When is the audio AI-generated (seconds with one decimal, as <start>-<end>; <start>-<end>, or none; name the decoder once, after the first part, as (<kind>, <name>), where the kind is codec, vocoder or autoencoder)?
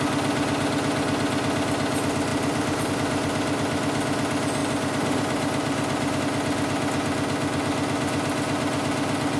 2.3-2.9 (vocoder, BigVGAN v2); 4.6-6.2